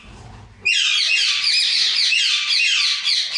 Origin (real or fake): real